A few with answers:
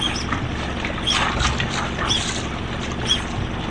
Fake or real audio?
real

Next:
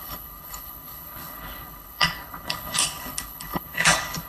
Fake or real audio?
fake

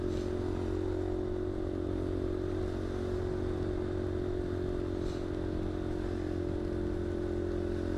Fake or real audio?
real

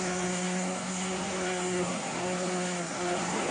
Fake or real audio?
fake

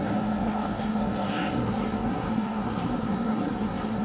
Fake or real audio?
fake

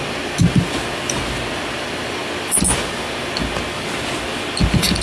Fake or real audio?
real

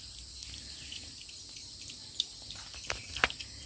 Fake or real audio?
real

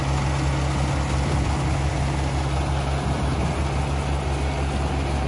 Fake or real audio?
real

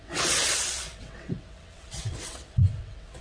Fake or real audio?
fake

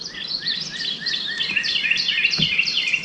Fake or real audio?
real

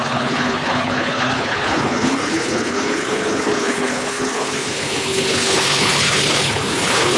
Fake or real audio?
fake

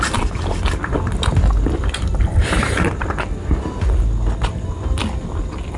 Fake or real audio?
fake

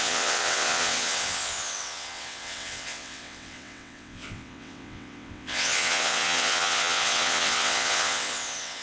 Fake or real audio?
fake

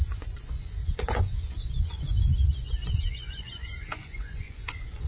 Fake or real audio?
fake